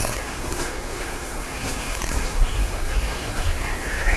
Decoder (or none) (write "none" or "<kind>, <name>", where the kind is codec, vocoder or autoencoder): codec, SNAC